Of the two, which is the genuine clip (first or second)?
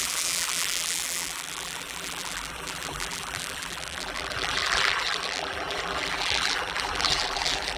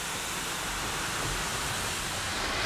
second